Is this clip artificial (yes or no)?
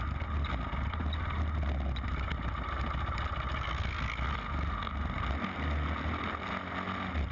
no